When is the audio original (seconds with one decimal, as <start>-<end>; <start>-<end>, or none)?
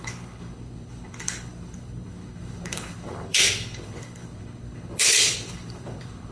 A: none